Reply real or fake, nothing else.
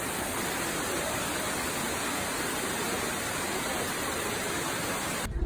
fake